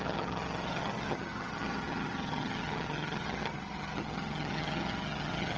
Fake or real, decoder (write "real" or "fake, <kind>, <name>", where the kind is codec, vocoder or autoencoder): fake, vocoder, HiFi-GAN